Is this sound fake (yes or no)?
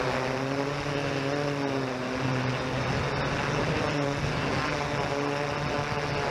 no